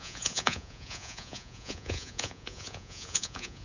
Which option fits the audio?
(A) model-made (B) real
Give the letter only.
A